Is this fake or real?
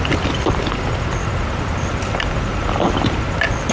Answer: real